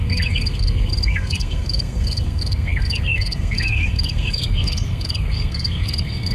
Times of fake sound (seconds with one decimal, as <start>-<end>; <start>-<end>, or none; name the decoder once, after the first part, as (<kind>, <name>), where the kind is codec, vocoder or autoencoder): 0.0-6.3 (codec, SNAC)